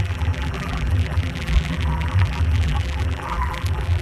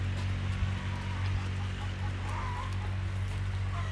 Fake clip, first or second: first